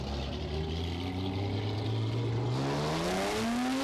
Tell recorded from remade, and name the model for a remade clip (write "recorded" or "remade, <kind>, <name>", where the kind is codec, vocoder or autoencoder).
recorded